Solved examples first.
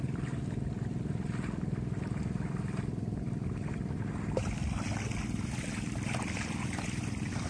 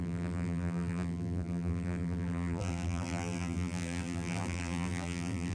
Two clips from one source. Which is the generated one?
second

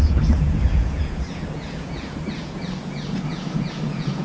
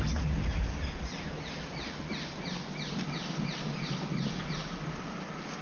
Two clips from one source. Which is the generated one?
first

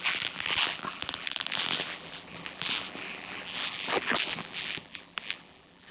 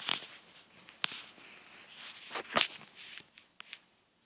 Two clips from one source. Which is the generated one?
first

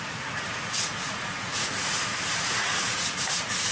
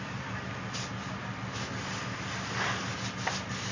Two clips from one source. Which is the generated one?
first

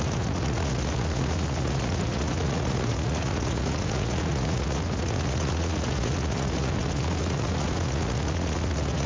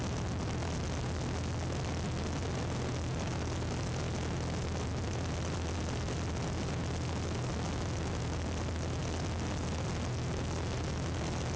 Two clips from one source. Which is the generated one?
first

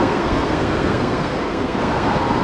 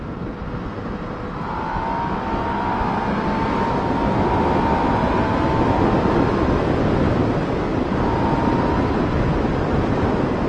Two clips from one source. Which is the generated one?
first